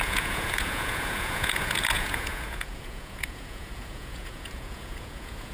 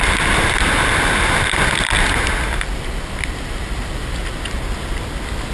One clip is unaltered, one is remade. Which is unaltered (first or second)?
second